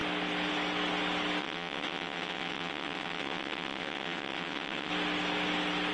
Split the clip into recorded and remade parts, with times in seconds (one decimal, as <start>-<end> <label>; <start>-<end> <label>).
0.0-1.4 recorded; 1.4-4.9 remade; 4.9-5.9 recorded